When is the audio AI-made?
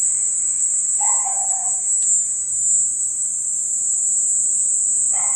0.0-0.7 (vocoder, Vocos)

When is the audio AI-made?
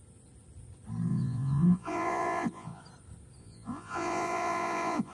1.1-2.8 (vocoder, Vocos); 3.4-5.1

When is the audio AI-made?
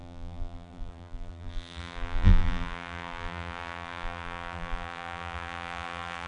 0.0-6.3 (vocoder, BigVGAN v2)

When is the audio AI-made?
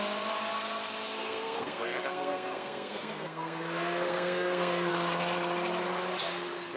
1.2-4.9 (codec, SNAC)